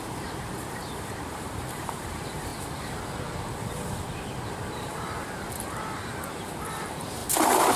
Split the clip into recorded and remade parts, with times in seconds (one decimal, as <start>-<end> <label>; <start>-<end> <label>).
0.0-2.5 remade; 2.5-4.5 recorded; 4.5-7.8 remade